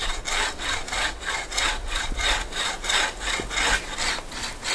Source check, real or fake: real